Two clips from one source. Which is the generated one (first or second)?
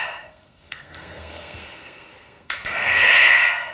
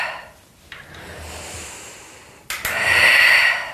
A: first